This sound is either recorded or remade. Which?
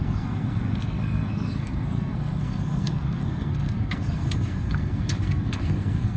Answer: remade